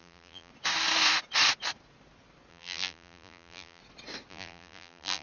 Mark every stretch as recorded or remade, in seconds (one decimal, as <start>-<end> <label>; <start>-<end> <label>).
0.0-0.5 remade; 0.5-2.5 recorded; 2.5-3.8 remade; 3.8-4.3 recorded; 4.3-5.2 remade